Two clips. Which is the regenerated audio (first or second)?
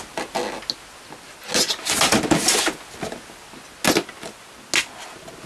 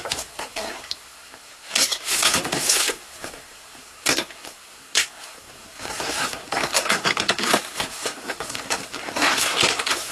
second